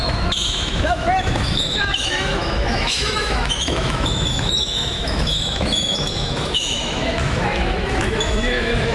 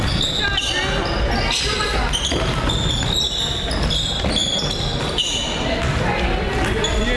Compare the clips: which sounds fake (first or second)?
first